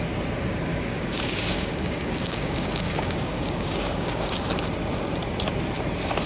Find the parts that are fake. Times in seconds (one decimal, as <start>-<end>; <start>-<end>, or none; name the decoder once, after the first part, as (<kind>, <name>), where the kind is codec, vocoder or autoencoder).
0.7-4.4 (codec, DAC)